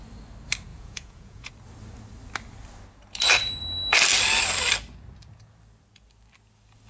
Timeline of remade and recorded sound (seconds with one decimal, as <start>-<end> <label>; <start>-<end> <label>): 0.0-0.7 recorded; 0.7-1.5 remade; 1.5-6.9 recorded